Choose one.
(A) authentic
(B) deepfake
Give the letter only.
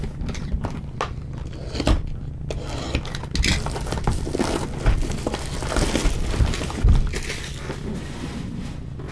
A